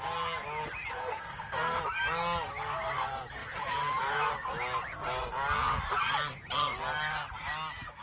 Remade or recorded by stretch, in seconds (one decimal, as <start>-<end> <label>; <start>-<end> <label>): 0.0-1.0 recorded; 1.0-1.8 remade; 1.8-8.0 recorded